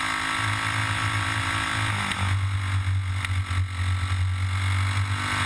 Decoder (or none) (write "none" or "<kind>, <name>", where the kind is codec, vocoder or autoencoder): none